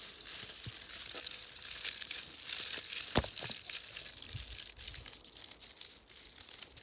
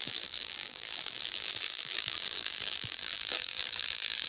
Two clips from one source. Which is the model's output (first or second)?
second